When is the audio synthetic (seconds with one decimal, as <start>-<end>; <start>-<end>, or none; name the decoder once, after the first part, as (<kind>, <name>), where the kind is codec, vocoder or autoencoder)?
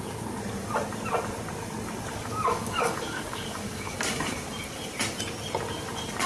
2.1-3.9 (codec, DAC)